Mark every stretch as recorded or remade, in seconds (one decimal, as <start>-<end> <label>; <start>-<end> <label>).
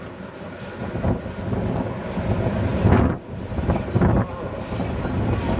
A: 0.0-5.6 recorded